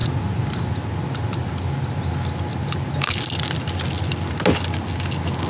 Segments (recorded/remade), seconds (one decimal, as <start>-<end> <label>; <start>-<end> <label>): 0.0-5.5 recorded